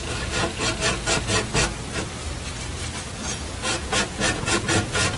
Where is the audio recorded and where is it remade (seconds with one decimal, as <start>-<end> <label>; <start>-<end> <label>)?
0.0-1.5 remade; 1.5-3.1 recorded; 3.1-5.2 remade

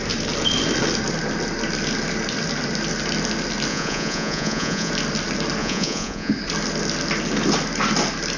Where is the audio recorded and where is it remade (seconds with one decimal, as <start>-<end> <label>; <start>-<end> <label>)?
0.0-3.7 recorded; 3.7-4.9 remade; 4.9-5.6 recorded; 5.6-6.3 remade; 6.3-8.4 recorded

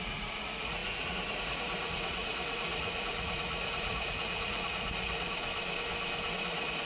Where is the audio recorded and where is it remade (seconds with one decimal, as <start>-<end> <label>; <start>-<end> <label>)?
0.0-5.5 remade; 5.5-6.3 recorded; 6.3-6.9 remade

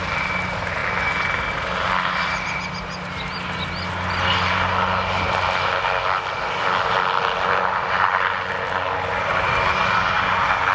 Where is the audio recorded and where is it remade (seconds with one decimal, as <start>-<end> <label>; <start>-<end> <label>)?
0.0-10.7 recorded

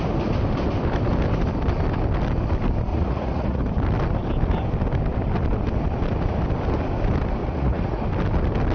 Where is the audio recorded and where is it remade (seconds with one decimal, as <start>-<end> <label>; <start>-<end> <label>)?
0.0-2.9 recorded; 2.9-3.6 remade; 3.6-7.4 recorded; 7.4-8.0 remade; 8.0-8.7 recorded